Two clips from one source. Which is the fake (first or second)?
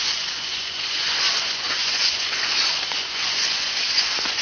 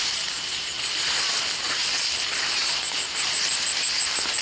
first